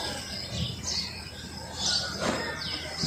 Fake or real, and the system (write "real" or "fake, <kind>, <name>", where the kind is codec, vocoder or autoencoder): real